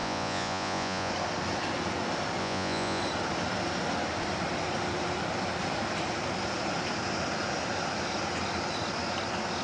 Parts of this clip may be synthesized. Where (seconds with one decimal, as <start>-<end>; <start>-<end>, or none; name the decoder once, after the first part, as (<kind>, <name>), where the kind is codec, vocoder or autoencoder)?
0.0-1.1 (vocoder, Vocos); 2.4-3.0